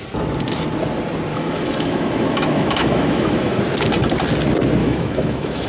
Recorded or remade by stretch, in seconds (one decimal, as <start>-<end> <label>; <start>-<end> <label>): 0.0-1.3 recorded; 1.3-3.6 remade; 3.6-4.8 recorded; 4.8-5.7 remade